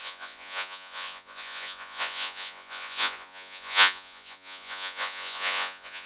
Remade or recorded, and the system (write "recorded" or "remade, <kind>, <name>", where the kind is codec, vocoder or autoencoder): remade, vocoder, Vocos